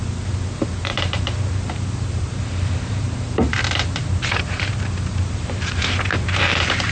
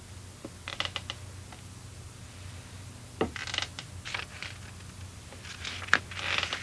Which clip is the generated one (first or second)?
first